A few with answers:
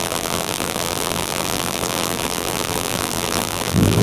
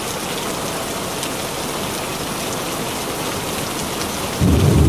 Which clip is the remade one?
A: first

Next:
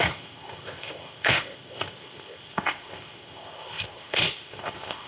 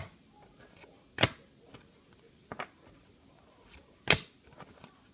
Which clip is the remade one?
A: first